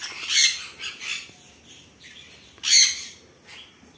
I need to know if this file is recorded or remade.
recorded